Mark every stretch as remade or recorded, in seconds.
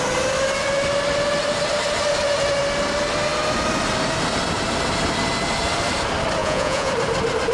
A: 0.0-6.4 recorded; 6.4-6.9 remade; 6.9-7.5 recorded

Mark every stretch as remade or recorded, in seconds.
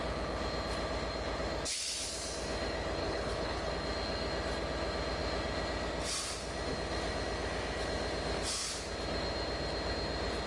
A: 0.0-3.0 recorded; 3.0-3.7 remade; 3.7-10.5 recorded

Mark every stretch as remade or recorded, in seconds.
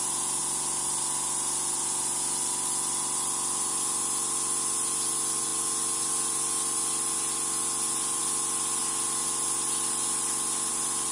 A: 0.0-11.1 recorded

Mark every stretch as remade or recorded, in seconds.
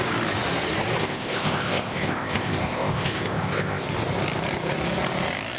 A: 0.0-1.0 recorded; 1.0-3.8 remade; 3.8-5.6 recorded